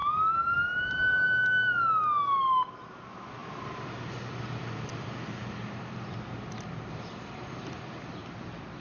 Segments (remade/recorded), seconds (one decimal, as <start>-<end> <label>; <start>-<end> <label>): 0.0-2.7 recorded; 2.7-8.2 remade; 8.2-8.8 recorded